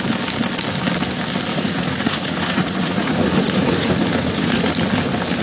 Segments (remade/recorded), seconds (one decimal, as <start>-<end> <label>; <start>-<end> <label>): 0.0-1.5 recorded; 1.5-4.7 remade; 4.7-5.4 recorded